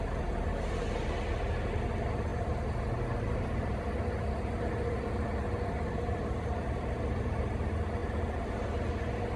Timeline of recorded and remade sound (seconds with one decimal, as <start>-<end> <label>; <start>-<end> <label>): 0.0-9.4 recorded